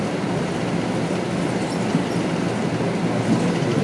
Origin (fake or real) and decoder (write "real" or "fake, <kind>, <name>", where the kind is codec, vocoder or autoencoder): real